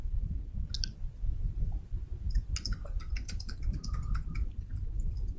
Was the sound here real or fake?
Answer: real